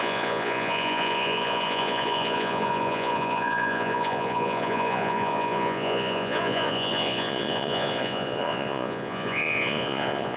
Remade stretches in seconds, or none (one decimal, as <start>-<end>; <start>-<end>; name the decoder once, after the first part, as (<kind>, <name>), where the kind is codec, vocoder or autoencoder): 0.0-10.4 (vocoder, Vocos)